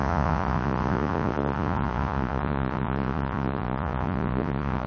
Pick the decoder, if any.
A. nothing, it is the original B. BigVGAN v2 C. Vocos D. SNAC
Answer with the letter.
C